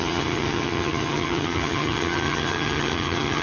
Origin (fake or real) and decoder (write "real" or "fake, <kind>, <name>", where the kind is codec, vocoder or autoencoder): fake, vocoder, HiFi-GAN